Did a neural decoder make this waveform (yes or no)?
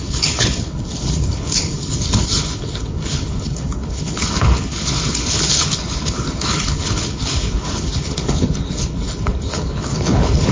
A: yes